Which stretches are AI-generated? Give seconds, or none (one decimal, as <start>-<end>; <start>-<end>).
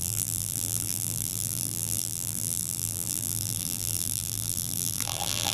0.0-5.5